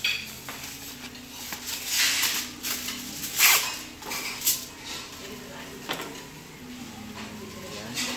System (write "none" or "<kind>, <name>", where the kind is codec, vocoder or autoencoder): none